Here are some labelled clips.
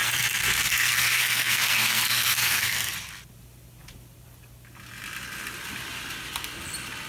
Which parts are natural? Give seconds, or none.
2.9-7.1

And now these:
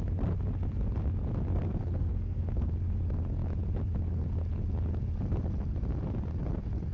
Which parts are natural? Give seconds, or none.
0.0-1.6; 2.7-6.9

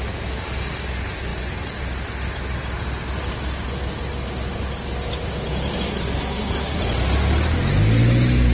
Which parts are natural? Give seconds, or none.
0.0-5.9; 6.8-8.5

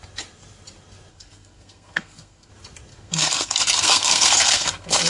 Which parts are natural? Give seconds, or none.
0.0-1.1; 2.5-2.9